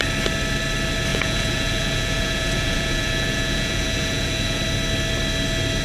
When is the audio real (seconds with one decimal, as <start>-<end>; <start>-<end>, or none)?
0.0-1.1; 4.6-5.8